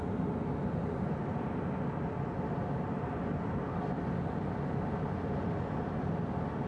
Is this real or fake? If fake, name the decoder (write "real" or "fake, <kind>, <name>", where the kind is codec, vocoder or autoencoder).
real